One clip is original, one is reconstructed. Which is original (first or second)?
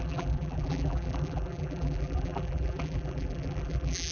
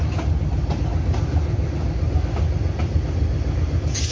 second